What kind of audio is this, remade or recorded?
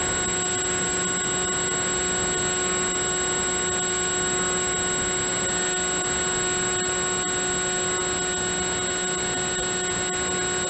recorded